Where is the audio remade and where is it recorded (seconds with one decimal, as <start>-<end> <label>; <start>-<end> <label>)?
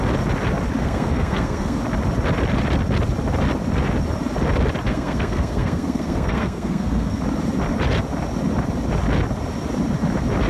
0.0-0.8 recorded; 0.8-1.8 remade; 1.8-4.9 recorded; 4.9-7.2 remade; 7.2-10.5 recorded